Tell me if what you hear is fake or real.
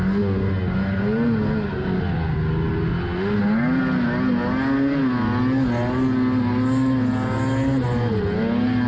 real